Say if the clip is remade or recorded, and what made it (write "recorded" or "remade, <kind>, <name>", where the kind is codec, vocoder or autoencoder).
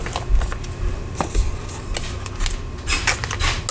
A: recorded